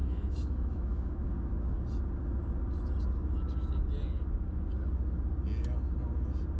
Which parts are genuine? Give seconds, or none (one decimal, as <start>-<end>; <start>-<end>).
1.3-6.6